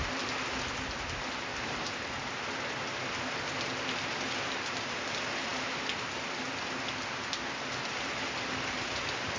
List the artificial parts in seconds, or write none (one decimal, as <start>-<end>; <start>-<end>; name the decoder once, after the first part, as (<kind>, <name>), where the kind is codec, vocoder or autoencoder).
1.5-2.1 (vocoder, BigVGAN v2)